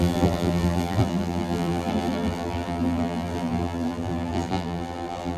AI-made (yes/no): yes